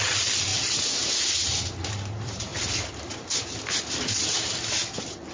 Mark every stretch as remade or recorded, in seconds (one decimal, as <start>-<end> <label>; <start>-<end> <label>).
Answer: 0.0-0.5 remade; 0.5-1.7 recorded; 1.7-2.5 remade; 2.5-5.3 recorded